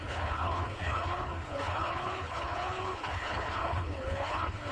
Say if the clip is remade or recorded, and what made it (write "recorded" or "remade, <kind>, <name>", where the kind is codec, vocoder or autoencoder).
remade, codec, HILCodec